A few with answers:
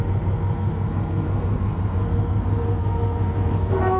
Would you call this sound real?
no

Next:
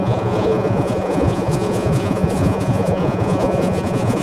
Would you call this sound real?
no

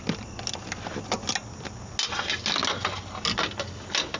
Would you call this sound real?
yes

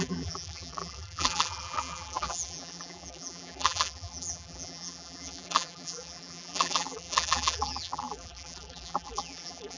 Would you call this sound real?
no